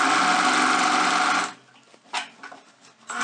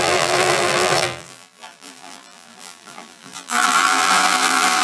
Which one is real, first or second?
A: first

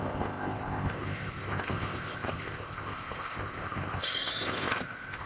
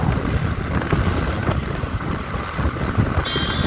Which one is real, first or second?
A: second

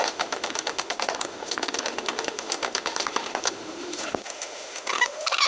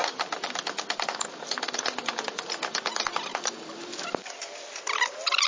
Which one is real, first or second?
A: second